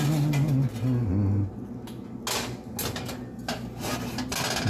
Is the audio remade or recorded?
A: recorded